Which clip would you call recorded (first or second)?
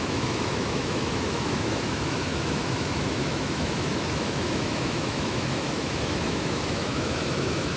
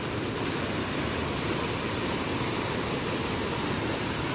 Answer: second